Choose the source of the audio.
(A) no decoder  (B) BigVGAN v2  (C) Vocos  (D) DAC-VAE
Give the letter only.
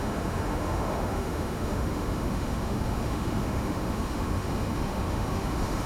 D